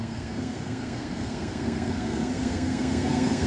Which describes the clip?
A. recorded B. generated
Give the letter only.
B